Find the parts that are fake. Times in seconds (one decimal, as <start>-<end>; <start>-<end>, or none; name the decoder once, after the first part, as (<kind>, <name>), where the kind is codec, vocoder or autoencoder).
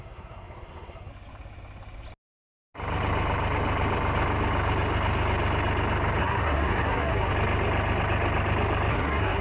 0.0-1.1 (codec, SNAC); 6.2-7.3; 8.9-9.4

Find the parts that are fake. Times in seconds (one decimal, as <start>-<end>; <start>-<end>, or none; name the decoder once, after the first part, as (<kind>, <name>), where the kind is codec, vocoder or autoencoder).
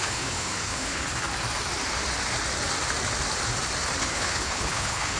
0.0-1.0 (codec, HILCodec); 4.0-5.2